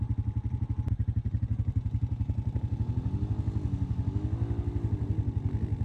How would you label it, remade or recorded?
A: recorded